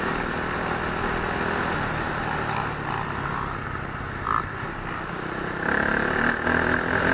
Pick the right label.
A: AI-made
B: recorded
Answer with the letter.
B